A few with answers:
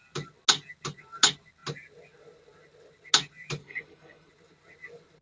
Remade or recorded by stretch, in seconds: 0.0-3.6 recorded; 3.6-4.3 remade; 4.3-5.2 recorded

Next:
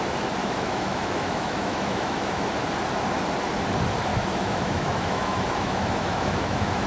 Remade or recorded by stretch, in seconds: 0.0-0.4 recorded; 0.4-2.5 remade; 2.5-4.1 recorded; 4.1-6.9 remade

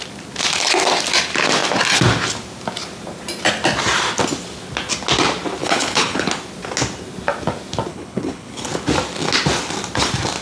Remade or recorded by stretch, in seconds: 0.0-5.6 recorded; 5.6-6.3 remade; 6.3-7.9 recorded; 7.9-8.7 remade; 8.7-10.4 recorded

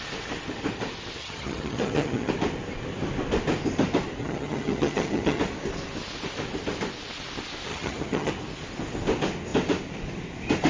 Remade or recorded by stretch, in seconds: 0.0-1.2 recorded; 1.2-2.3 remade; 2.3-4.2 recorded; 4.2-5.4 remade; 5.4-7.7 recorded; 7.7-8.3 remade; 8.3-10.7 recorded

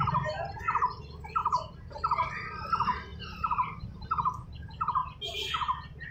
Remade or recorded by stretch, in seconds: 0.0-1.4 recorded; 1.4-2.0 remade; 2.0-3.1 recorded; 3.1-4.1 remade; 4.1-6.1 recorded

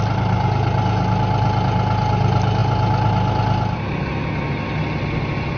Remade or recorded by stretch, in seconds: 0.0-5.6 recorded